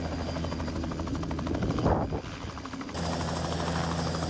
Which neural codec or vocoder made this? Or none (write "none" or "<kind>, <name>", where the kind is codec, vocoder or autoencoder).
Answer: none